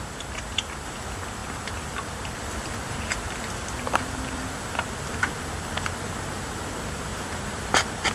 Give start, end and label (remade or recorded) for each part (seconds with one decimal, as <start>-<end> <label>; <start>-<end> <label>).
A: 0.0-1.4 recorded; 1.4-6.1 remade; 6.1-7.1 recorded; 7.1-8.1 remade